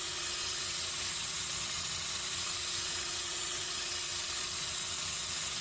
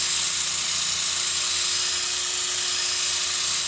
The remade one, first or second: first